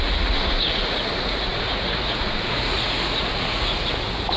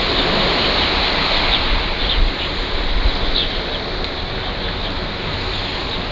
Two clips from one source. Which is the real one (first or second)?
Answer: second